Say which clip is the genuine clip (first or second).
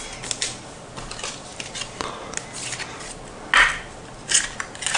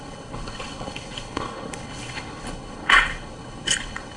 first